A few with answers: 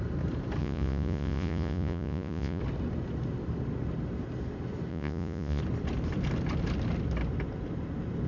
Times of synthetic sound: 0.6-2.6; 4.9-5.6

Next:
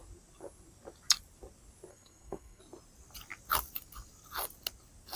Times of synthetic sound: 1.9-2.6

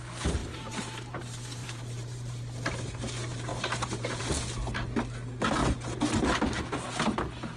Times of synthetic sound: 0.4-1.2; 1.6-2.3; 3.5-4.2

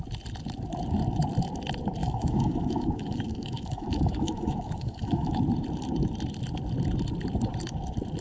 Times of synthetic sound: 2.0-5.4

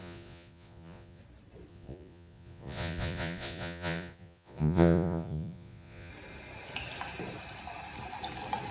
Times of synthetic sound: 0.0-1.2; 1.7-6.1

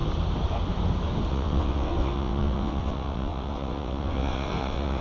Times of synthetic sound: 1.3-5.0

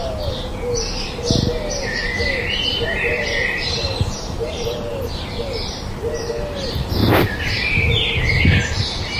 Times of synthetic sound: 2.7-4.7; 7.0-8.1

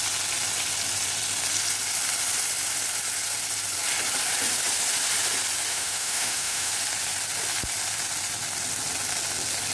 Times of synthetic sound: 5.7-6.7